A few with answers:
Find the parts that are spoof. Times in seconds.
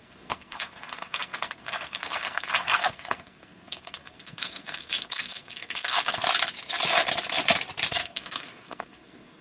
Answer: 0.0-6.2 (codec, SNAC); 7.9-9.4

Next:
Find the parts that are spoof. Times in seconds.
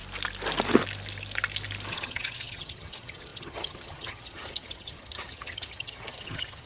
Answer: 1.9-6.7 (vocoder, HiFi-GAN)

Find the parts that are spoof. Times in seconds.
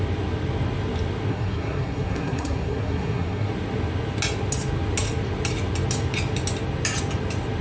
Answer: 1.3-3.5 (codec, SNAC)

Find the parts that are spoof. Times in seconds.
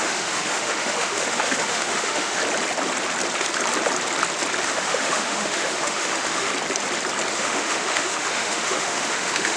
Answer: 0.0-2.4 (autoencoder, DAC-VAE); 4.6-6.5; 7.3-9.6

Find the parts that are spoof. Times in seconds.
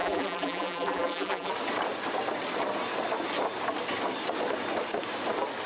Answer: 0.0-1.5 (vocoder, BigVGAN v2)